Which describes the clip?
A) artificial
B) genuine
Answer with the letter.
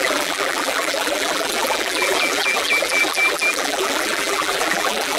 A